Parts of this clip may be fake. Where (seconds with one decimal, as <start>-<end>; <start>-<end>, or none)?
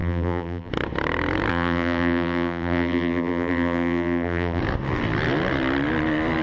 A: 0.0-0.7; 1.5-4.6